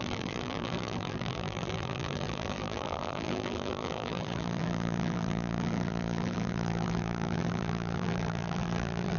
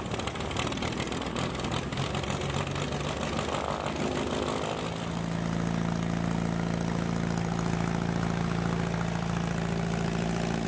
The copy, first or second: first